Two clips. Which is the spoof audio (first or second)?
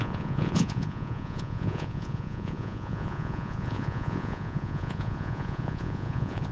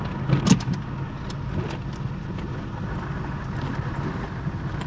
first